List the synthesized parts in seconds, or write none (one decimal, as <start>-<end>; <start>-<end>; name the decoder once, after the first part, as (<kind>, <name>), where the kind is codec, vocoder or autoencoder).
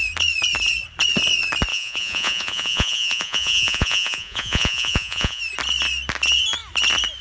1.7-5.4 (vocoder, Vocos)